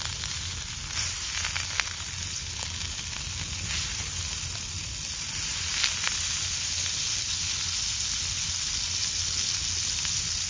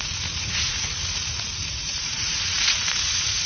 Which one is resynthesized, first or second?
second